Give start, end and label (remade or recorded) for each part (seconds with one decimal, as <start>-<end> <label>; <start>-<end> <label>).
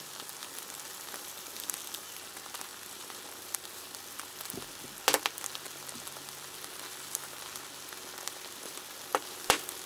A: 0.0-9.9 recorded